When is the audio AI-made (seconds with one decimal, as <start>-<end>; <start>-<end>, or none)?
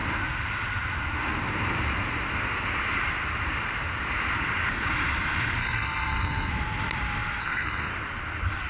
5.6-6.5; 7.4-7.9